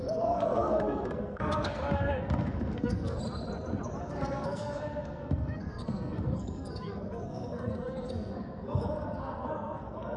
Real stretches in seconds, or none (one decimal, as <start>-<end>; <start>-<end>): 3.2-4.0